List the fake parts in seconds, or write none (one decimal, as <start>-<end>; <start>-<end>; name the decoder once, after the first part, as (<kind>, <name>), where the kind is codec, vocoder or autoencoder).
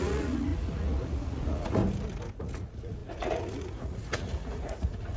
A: 0.0-1.8 (vocoder, Vocos); 2.4-5.2